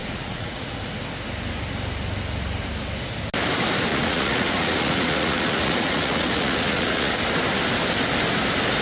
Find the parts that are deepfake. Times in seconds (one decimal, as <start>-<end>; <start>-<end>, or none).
0.0-0.9; 3.9-7.1